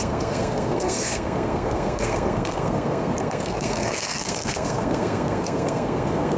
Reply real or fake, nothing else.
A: fake